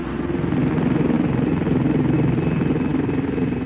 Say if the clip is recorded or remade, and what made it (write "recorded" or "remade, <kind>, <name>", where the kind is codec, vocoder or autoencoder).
recorded